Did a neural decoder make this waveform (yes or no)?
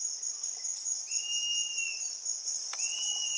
no